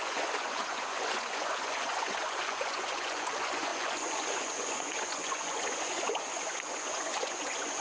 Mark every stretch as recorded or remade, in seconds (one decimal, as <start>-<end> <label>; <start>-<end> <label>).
0.0-7.8 remade

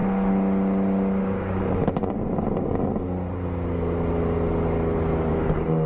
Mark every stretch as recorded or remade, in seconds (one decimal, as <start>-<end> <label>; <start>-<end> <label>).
0.0-1.2 recorded; 1.2-1.8 remade; 1.8-5.3 recorded; 5.3-5.9 remade